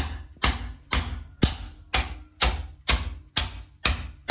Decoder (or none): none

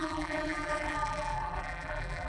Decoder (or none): vocoder, BigVGAN v2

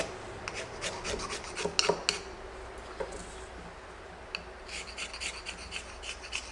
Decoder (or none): none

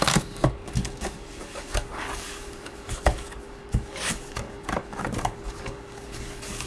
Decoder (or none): codec, DAC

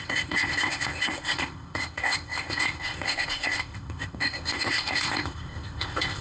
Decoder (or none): codec, ZipCodec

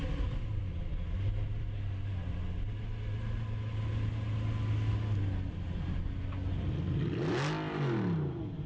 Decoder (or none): none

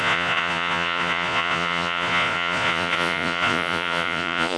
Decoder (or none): vocoder, Vocos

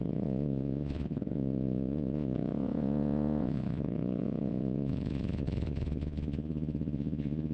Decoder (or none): vocoder, Vocos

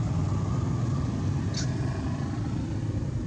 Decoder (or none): none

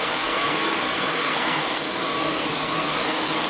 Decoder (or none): codec, SNAC